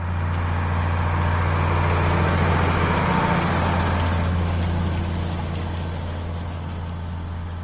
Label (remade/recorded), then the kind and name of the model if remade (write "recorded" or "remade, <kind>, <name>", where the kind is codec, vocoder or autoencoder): recorded